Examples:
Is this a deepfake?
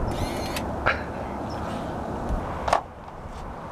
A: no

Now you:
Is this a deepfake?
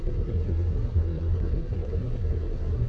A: yes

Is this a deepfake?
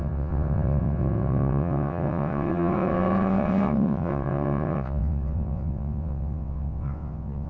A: yes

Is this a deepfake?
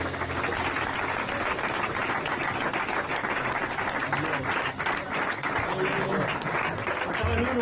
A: no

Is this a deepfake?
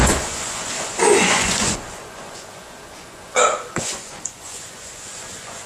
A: yes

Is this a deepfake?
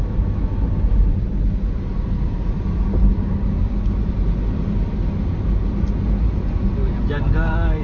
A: no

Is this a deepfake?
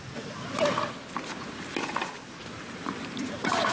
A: no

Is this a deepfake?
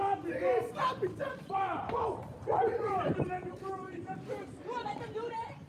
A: yes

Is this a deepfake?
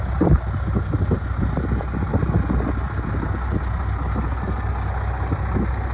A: no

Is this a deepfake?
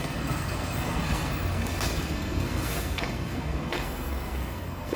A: yes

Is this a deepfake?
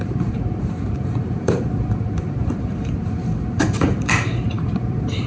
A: yes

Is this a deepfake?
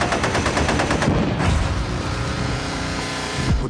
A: yes